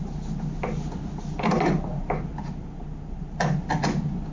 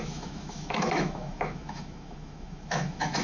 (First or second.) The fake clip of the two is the second